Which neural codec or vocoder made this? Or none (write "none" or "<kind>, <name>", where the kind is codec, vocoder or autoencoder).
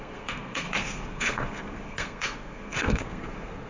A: codec, SNAC